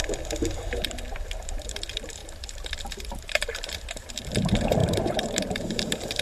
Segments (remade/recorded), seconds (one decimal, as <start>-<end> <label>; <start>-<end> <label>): 0.0-2.2 recorded; 2.2-4.1 remade; 4.1-4.8 recorded; 4.8-5.6 remade; 5.6-6.2 recorded